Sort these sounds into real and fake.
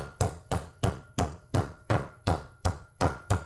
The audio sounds fake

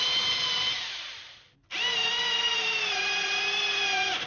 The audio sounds real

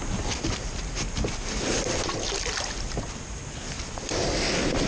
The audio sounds real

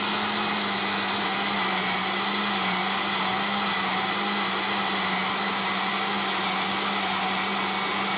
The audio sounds real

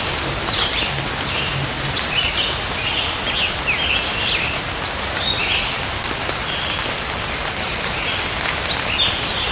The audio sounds real